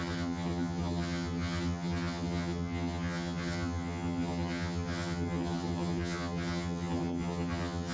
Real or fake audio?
fake